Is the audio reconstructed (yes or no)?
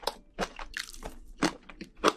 yes